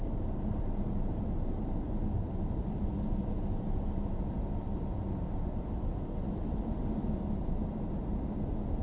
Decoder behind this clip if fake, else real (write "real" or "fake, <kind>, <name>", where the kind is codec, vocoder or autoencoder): real